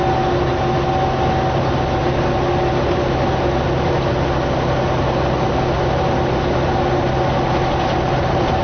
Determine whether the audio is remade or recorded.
recorded